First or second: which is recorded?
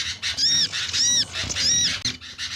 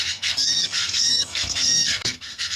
first